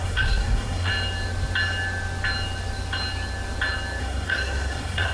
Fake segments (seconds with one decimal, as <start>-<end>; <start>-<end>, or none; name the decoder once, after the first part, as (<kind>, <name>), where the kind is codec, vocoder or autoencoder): 0.0-0.9 (codec, SNAC); 4.0-5.1